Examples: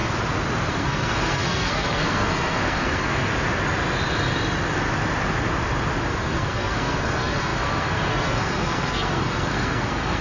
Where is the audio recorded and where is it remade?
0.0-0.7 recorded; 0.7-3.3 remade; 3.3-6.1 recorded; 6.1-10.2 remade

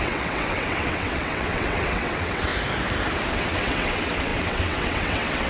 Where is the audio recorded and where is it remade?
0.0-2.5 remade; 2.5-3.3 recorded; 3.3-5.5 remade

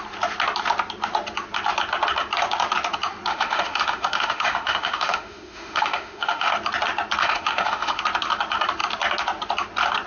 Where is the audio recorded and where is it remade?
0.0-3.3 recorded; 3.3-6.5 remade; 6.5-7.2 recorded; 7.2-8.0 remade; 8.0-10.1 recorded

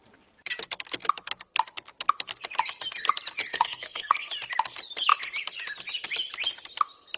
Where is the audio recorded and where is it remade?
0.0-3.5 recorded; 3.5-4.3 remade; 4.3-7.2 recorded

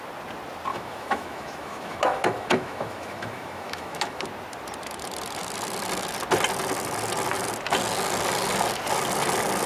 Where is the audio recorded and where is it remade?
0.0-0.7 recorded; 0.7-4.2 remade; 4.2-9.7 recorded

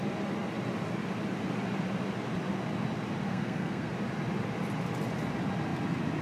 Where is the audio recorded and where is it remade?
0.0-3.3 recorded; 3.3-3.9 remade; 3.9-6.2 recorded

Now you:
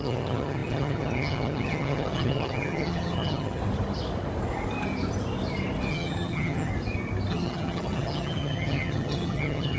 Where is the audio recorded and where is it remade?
0.0-3.6 remade; 3.6-5.9 recorded; 5.9-6.7 remade; 6.7-7.3 recorded; 7.3-9.8 remade

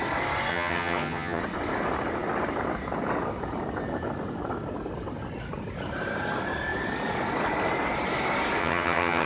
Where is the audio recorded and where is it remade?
0.0-0.5 recorded; 0.5-1.4 remade; 1.4-8.6 recorded; 8.6-9.3 remade